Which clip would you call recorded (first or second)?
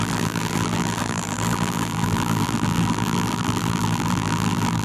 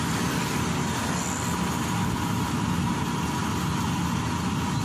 second